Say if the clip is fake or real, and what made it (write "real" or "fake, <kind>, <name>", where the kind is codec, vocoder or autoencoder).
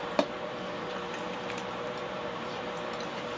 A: fake, vocoder, BigVGAN v2